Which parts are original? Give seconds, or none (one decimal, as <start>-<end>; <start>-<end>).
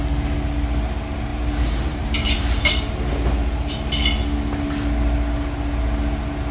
0.0-1.3; 2.9-6.5